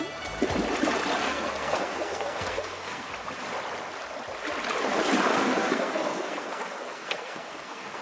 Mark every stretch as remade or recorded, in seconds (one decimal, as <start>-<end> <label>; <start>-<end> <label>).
0.0-1.2 recorded; 1.2-3.1 remade; 3.1-5.3 recorded; 5.3-8.0 remade